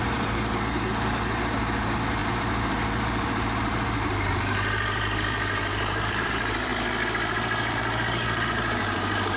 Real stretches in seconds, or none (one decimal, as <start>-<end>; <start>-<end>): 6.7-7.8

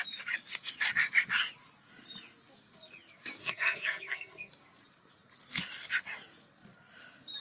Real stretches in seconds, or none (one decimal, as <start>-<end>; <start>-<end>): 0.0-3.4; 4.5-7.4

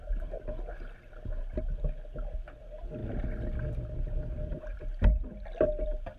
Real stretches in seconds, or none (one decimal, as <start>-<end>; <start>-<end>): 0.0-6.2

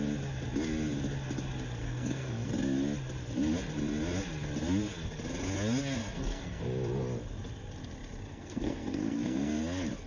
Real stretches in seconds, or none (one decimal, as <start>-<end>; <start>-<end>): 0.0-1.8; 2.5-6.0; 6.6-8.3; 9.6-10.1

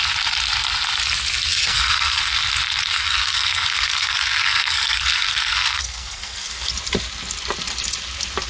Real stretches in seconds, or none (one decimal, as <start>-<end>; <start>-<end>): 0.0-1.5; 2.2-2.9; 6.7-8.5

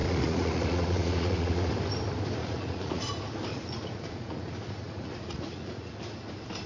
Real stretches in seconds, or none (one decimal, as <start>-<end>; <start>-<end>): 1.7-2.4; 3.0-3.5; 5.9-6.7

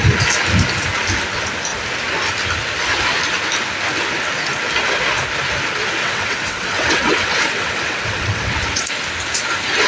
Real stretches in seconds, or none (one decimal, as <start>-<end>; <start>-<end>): 0.0-6.0; 8.8-9.9